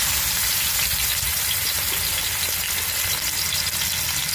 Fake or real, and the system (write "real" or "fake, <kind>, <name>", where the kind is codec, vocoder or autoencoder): real